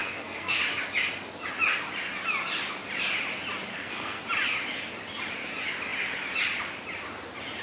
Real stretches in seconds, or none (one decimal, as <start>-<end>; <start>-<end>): 0.6-3.7; 4.2-7.6